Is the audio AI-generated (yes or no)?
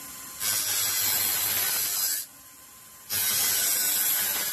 no